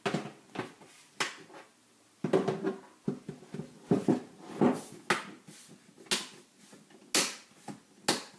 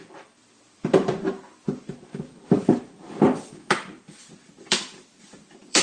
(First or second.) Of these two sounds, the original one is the first